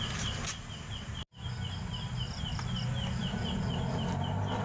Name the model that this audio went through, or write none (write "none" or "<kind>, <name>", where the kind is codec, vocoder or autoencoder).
none